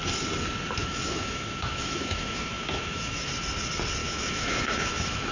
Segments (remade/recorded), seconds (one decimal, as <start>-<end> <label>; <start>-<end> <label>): 0.0-0.8 recorded; 0.8-3.3 remade; 3.3-4.0 recorded; 4.0-5.3 remade